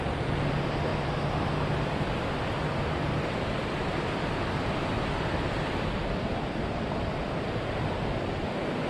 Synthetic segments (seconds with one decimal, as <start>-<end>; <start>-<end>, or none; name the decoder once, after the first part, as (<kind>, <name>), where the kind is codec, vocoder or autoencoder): none